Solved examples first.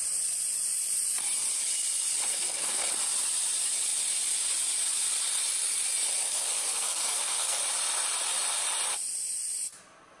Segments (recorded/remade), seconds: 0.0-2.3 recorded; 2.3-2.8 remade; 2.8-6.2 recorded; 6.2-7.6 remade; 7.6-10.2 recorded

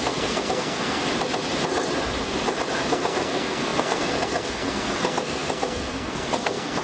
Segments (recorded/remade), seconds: 0.0-1.0 remade; 1.0-2.9 recorded; 2.9-6.8 remade

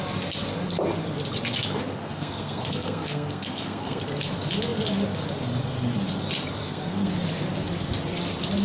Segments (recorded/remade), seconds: 0.0-2.0 recorded; 2.0-4.0 remade; 4.0-6.6 recorded; 6.6-7.1 remade; 7.1-8.6 recorded